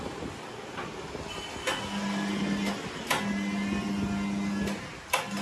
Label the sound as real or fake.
real